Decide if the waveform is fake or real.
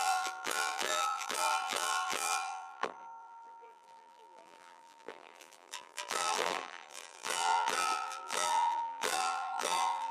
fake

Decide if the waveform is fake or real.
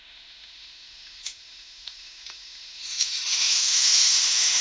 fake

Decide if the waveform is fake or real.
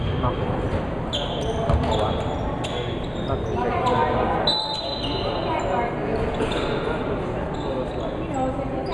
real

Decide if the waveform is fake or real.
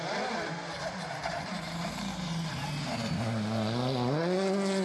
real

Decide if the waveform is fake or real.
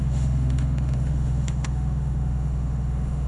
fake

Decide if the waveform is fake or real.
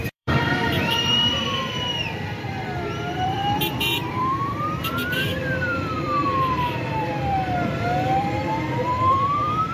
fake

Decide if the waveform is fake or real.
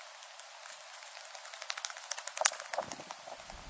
real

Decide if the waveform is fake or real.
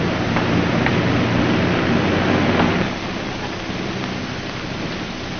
real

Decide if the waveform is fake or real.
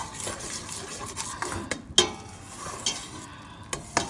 real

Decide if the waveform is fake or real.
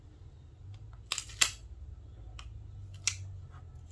real